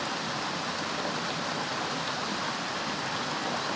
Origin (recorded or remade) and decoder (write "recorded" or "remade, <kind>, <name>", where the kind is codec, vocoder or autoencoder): recorded